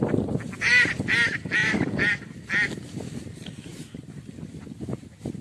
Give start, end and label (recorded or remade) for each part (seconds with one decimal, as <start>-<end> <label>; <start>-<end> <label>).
0.0-1.6 recorded; 1.6-2.2 remade; 2.2-5.4 recorded